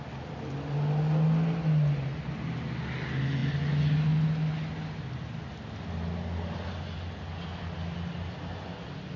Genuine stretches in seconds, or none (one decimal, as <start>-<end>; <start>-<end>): 0.0-9.2